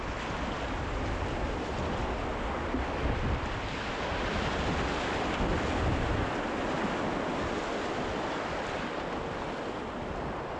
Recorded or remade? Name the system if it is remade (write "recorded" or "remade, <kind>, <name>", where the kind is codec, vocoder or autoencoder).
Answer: recorded